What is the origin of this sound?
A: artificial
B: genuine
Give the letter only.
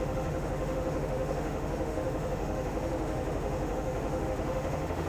A